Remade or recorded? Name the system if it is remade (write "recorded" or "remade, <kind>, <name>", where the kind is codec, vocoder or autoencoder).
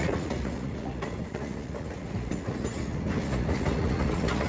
remade, vocoder, Vocos